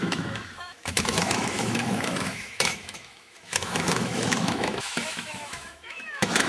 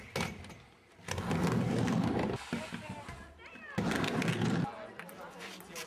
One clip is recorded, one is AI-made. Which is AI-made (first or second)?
first